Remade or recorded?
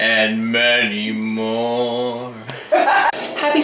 recorded